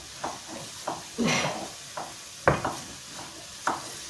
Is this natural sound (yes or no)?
yes